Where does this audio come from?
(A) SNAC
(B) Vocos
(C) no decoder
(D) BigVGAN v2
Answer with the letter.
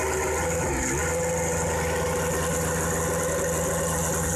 C